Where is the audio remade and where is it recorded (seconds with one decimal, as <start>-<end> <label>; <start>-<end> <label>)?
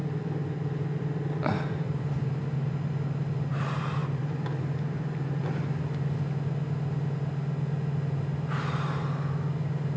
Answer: 0.0-2.7 remade; 2.7-4.0 recorded; 4.0-5.4 remade; 5.4-10.0 recorded